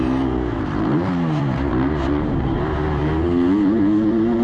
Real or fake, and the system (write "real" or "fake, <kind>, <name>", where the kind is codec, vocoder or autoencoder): fake, vocoder, BigVGAN v2